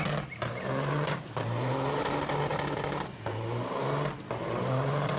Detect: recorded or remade recorded